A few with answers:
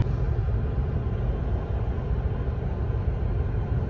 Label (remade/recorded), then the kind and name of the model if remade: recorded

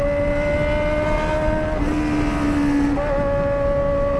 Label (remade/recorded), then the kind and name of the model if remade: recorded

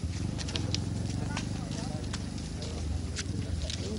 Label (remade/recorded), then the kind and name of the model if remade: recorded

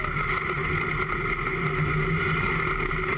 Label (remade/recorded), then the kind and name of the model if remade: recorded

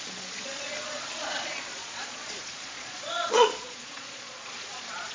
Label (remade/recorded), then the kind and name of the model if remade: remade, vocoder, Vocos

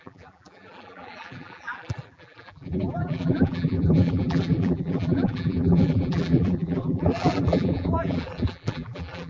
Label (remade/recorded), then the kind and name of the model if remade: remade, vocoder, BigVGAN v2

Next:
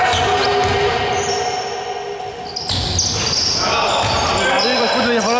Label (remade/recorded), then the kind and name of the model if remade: recorded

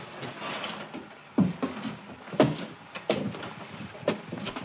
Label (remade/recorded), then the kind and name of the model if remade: recorded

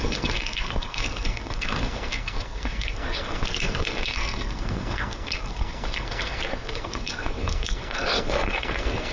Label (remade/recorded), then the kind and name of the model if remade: remade, codec, SNAC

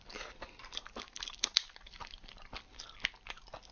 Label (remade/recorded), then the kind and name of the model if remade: recorded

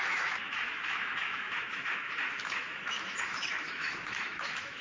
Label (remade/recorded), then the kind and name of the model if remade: remade, autoencoder, DAC-VAE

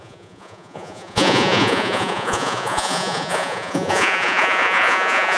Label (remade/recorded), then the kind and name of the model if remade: remade, vocoder, Vocos